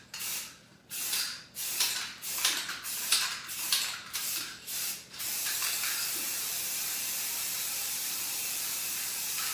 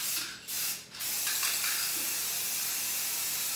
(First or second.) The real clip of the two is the second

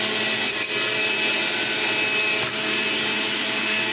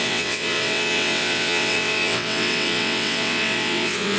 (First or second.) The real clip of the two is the first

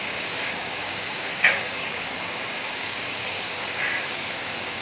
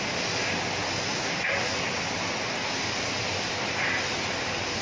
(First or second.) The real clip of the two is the second